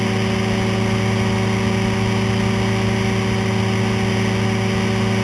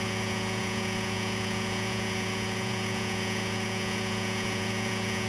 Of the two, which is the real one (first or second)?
first